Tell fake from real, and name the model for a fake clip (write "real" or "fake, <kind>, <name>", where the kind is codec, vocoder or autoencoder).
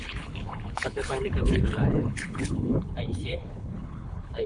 fake, codec, HILCodec